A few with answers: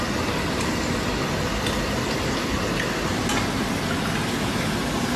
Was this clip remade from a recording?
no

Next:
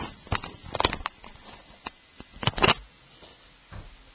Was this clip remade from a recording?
no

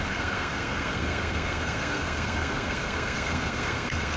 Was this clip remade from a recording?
yes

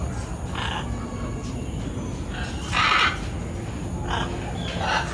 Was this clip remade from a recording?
no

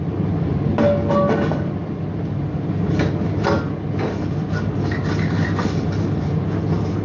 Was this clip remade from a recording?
no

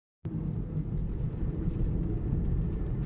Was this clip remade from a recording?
no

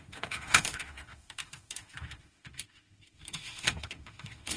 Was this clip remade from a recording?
yes